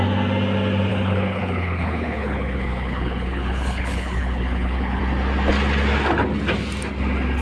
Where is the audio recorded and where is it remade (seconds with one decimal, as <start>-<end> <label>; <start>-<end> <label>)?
0.0-0.9 recorded; 0.9-5.0 remade; 5.0-7.4 recorded